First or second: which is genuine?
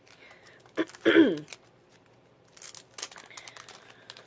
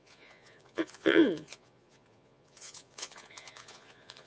first